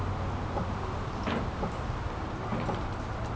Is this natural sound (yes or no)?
yes